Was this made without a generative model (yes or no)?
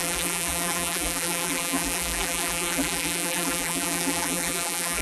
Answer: no